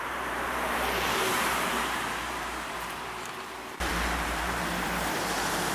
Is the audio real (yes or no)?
no